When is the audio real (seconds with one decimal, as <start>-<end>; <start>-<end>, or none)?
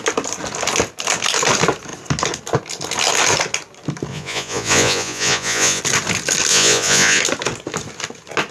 0.0-4.1; 5.8-6.5; 7.2-8.5